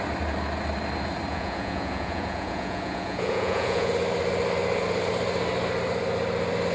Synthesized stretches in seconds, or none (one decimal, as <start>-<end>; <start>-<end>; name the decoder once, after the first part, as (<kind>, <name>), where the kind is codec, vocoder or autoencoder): 1.3-3.9 (vocoder, Vocos)